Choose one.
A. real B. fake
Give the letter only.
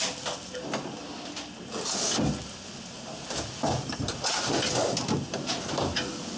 A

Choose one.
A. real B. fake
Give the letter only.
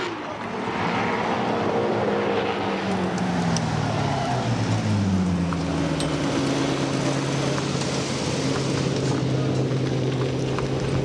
A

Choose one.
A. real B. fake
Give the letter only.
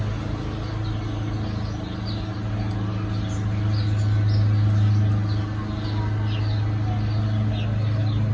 A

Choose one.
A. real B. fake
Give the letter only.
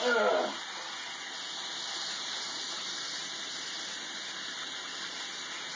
A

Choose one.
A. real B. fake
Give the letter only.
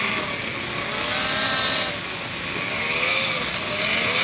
A